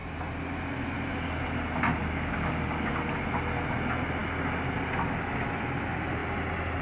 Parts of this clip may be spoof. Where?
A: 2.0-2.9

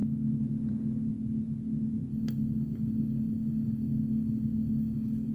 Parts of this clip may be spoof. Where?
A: 2.1-5.3